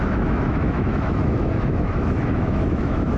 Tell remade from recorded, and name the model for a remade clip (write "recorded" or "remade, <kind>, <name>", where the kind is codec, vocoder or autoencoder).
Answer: remade, autoencoder, DAC-VAE